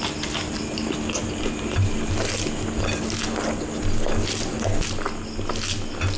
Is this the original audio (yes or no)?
yes